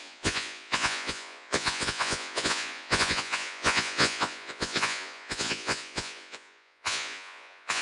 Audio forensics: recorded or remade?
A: remade